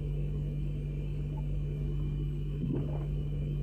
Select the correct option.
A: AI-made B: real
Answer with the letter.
A